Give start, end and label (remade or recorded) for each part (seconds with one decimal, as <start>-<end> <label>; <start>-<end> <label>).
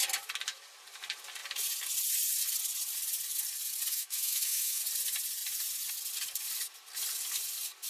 0.0-3.9 recorded; 3.9-4.8 remade; 4.8-7.9 recorded